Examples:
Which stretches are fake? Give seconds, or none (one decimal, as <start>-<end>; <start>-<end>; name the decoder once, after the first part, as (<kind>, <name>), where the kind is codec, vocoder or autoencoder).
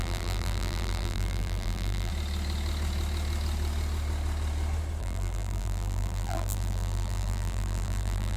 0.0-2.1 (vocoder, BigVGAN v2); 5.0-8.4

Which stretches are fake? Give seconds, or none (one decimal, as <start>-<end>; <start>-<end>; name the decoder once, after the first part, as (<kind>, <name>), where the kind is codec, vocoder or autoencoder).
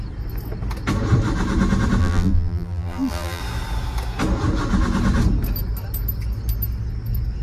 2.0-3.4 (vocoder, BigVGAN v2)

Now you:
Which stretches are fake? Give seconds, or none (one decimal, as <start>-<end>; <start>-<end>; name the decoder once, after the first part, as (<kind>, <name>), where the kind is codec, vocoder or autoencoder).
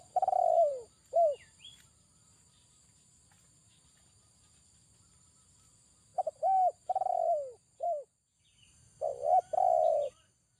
none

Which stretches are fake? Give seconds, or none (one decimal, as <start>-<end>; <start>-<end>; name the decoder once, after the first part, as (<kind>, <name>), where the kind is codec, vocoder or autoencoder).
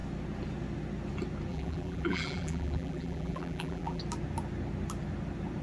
1.5-4.0 (vocoder, BigVGAN v2)